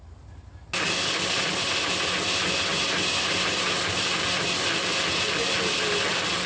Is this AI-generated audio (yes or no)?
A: no